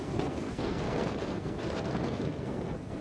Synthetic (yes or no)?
yes